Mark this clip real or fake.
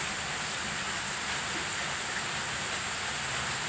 real